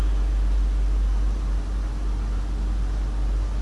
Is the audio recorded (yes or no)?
yes